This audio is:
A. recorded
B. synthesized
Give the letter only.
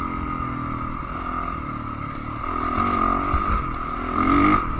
A